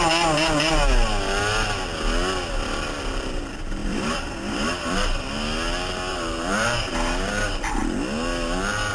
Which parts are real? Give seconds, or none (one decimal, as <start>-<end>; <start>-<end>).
0.0-3.8; 5.3-6.1; 6.9-8.9